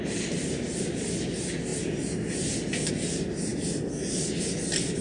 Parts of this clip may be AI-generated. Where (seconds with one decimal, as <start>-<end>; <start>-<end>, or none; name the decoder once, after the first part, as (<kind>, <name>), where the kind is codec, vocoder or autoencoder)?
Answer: 1.7-2.9 (vocoder, BigVGAN v2)